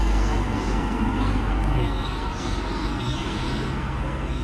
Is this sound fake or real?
fake